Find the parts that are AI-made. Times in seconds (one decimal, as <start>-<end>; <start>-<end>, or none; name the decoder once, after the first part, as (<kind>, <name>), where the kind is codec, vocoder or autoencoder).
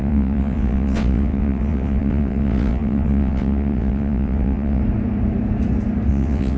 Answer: 0.0-4.8 (vocoder, WaveNeXt); 6.1-6.6